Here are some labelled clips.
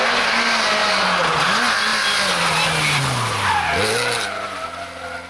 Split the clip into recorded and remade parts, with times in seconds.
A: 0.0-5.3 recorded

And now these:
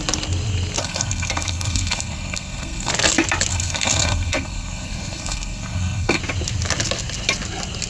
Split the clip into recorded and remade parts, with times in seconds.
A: 0.0-0.8 recorded; 0.8-2.9 remade; 2.9-3.5 recorded; 3.5-6.2 remade; 6.2-7.9 recorded

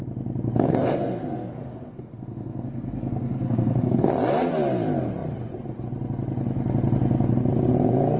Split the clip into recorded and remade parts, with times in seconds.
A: 0.0-0.7 recorded; 0.7-4.1 remade; 4.1-8.2 recorded